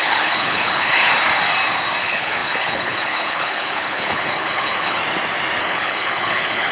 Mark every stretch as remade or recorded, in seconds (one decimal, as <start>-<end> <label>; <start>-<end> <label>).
0.0-1.1 remade; 1.1-2.0 recorded; 2.0-5.0 remade; 5.0-5.6 recorded; 5.6-6.7 remade